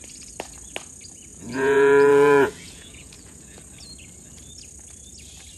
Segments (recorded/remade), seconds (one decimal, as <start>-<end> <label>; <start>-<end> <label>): 0.0-1.3 recorded; 1.3-3.6 remade; 3.6-5.6 recorded

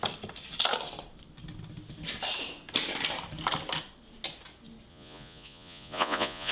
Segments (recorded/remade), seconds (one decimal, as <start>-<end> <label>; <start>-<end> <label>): 0.0-4.9 recorded; 4.9-6.5 remade

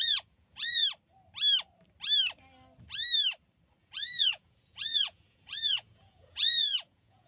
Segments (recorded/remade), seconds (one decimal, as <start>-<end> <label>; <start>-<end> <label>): 0.0-0.8 remade; 0.8-3.8 recorded; 3.8-7.3 remade

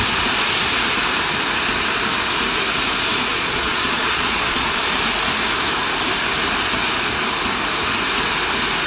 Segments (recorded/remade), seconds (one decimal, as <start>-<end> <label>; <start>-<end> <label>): 0.0-3.3 recorded; 3.3-4.8 remade; 4.8-8.9 recorded

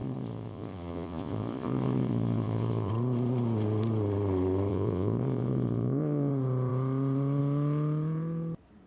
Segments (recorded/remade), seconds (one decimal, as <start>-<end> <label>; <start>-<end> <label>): 0.0-2.9 remade; 2.9-4.7 recorded; 4.7-6.3 remade; 6.3-8.9 recorded

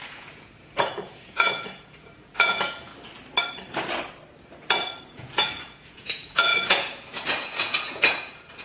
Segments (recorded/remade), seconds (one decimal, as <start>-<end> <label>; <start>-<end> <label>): 0.0-2.9 remade; 2.9-5.0 recorded; 5.0-8.6 remade